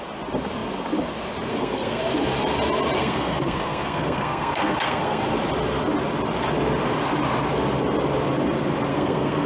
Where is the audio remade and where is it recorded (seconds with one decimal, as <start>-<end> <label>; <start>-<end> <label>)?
0.0-1.5 recorded; 1.5-2.0 remade; 2.0-3.0 recorded; 3.0-5.2 remade; 5.2-8.9 recorded; 8.9-9.5 remade